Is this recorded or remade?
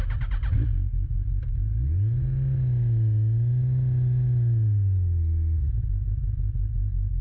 recorded